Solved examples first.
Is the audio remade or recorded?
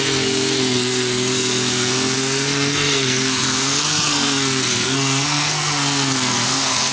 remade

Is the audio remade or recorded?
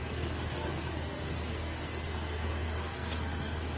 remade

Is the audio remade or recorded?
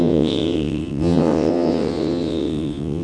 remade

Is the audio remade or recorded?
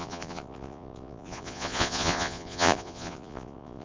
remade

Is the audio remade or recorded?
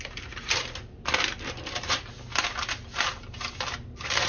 recorded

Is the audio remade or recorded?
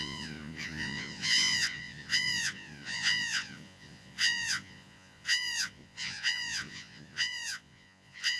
remade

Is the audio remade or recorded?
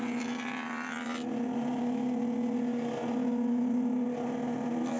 recorded